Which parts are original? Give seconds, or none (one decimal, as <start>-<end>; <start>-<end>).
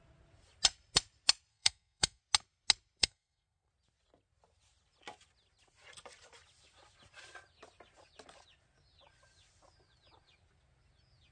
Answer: 0.0-1.5; 2.2-3.0; 3.7-11.3